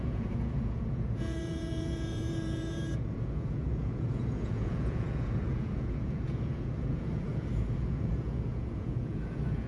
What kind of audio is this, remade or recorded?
remade